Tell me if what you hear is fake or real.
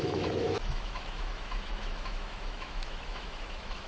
fake